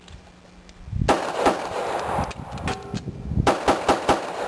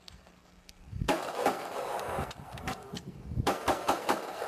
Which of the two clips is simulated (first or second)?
second